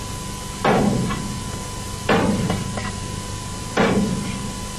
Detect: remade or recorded recorded